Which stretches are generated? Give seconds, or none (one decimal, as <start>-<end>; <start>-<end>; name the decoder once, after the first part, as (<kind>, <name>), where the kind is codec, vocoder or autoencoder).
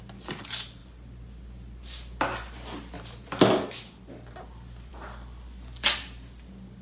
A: none